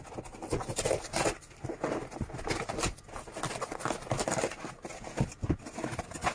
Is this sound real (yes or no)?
yes